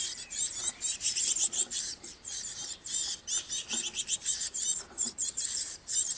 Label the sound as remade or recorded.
remade